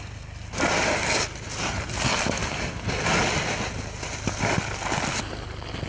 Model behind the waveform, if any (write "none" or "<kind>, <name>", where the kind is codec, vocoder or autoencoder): none